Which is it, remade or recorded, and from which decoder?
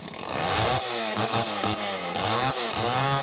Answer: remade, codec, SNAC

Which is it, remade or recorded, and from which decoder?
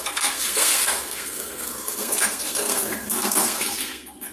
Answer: remade, codec, SNAC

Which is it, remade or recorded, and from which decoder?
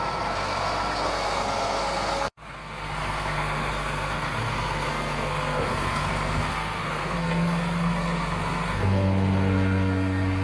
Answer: remade, codec, SNAC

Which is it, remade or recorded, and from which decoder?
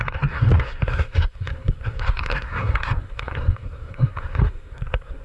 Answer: remade, codec, SNAC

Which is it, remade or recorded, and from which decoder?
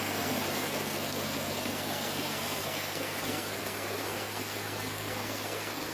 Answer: remade, codec, SNAC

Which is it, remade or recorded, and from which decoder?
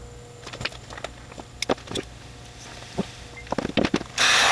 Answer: recorded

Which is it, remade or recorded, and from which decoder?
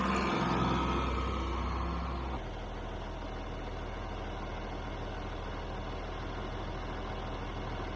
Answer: recorded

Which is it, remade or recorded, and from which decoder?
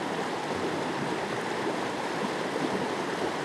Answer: recorded